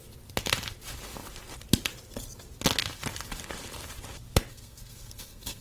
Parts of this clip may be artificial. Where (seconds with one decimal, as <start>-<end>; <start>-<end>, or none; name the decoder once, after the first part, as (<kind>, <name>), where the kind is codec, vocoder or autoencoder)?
4.5-5.6 (codec, SNAC)